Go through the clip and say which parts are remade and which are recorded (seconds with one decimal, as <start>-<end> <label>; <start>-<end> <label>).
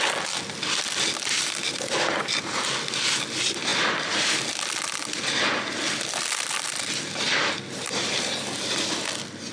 0.0-9.5 recorded